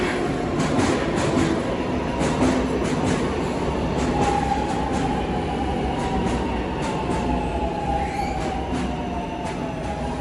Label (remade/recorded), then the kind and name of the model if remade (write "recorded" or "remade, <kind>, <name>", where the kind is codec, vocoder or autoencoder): recorded